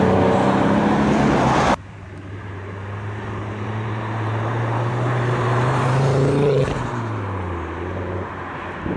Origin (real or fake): fake